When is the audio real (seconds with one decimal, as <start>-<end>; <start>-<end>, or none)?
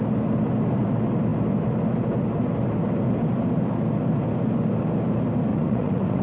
0.0-5.5